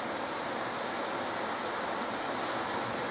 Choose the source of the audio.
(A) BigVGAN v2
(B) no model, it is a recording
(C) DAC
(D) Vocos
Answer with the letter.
B